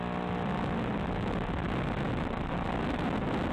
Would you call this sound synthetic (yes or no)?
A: no